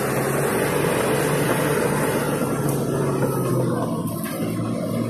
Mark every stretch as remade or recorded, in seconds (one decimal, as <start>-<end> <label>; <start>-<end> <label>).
0.0-5.1 recorded